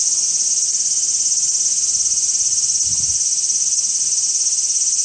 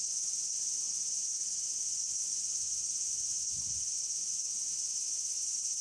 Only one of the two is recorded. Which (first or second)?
first